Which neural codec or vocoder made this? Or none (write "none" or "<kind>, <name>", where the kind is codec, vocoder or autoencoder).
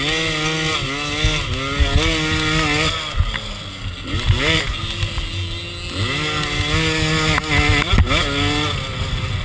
none